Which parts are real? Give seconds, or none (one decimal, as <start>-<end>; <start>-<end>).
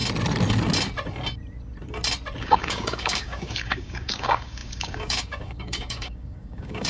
0.0-2.4